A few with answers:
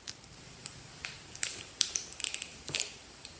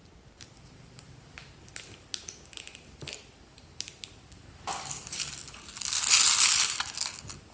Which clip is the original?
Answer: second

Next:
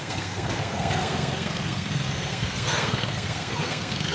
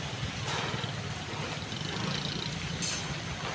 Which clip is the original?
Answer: second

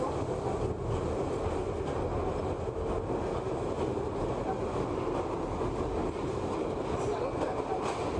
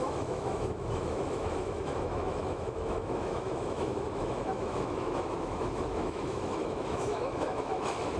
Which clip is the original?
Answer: first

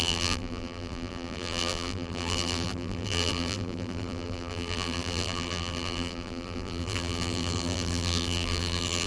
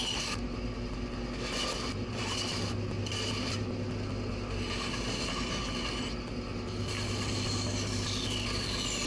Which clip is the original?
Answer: second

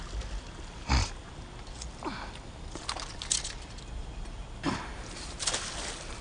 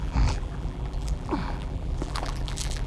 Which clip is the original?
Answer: first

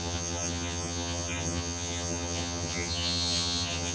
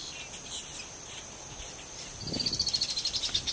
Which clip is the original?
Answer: second